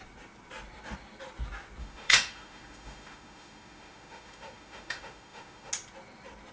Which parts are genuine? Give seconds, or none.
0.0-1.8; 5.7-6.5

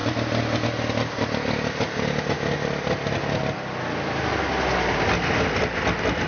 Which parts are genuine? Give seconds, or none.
0.0-6.3